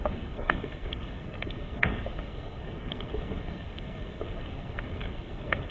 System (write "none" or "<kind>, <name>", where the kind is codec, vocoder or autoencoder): codec, SNAC